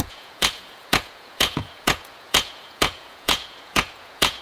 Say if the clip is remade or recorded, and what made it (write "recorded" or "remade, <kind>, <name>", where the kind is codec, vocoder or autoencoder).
remade, vocoder, Vocos